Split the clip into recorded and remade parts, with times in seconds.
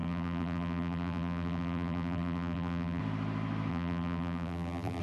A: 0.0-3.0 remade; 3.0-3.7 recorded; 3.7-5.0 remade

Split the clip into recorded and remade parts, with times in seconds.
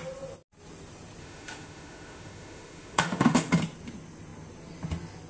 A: 0.0-1.2 recorded; 1.2-3.5 remade; 3.5-5.3 recorded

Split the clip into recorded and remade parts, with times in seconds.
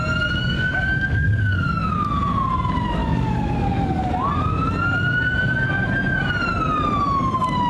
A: 0.0-0.4 recorded; 0.4-1.9 remade; 1.9-3.0 recorded; 3.0-4.1 remade; 4.1-7.7 recorded